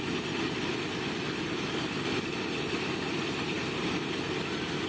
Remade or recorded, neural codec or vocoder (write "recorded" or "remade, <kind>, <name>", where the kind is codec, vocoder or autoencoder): recorded